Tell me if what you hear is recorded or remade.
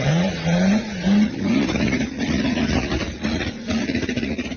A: remade